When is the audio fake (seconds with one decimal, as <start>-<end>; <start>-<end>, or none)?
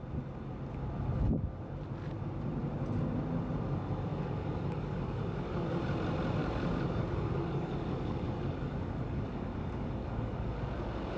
4.1-5.8; 6.4-10.6